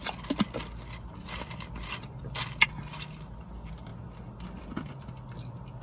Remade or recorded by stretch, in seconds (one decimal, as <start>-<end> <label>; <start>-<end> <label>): 0.0-5.8 recorded